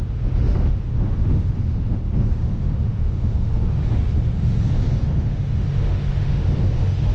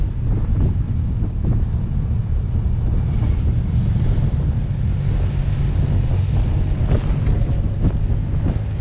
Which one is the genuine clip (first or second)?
second